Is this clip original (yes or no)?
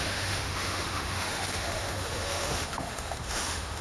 no